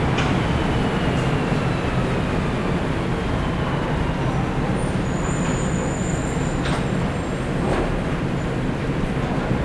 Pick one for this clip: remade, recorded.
recorded